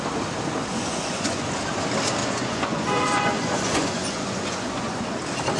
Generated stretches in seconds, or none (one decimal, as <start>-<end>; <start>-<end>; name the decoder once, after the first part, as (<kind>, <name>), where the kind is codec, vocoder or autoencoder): 0.7-1.6 (vocoder, Vocos); 2.2-5.0